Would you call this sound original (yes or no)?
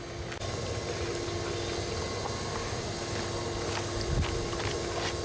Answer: yes